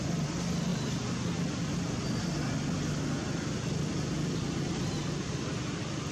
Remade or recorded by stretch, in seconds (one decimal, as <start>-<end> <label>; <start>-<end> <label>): 0.0-6.1 recorded